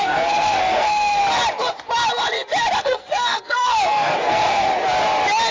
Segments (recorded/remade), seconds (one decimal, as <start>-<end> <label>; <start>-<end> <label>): 0.0-1.2 remade; 1.2-2.8 recorded; 2.8-4.7 remade; 4.7-5.5 recorded